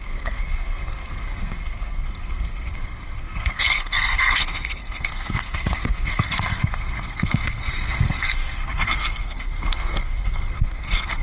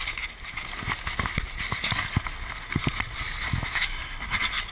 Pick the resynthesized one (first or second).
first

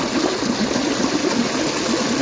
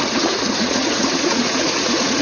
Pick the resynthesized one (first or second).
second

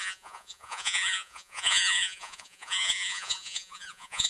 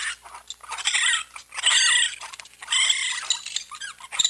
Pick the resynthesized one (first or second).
first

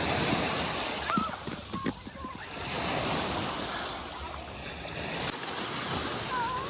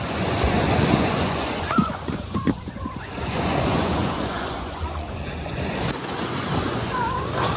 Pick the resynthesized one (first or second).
second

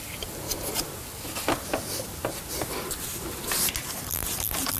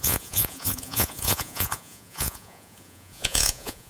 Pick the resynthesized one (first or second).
second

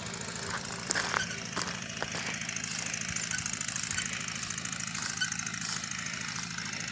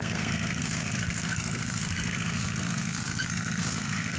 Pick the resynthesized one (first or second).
second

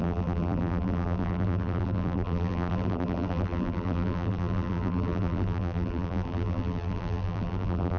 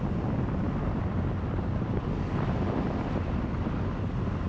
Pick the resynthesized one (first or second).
first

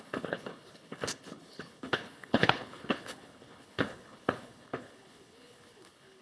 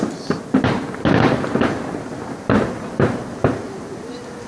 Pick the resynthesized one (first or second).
first